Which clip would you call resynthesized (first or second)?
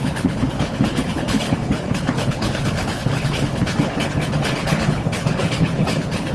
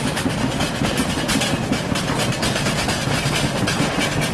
first